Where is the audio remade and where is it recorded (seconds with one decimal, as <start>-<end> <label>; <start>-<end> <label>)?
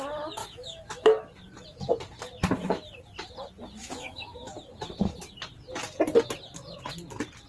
0.0-0.4 recorded; 0.4-1.3 remade; 1.3-3.8 recorded; 3.8-4.5 remade; 4.5-7.5 recorded